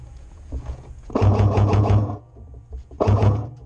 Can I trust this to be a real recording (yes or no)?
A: no